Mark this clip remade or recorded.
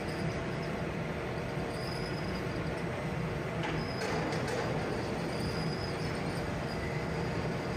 remade